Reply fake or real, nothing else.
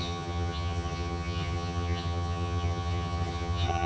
fake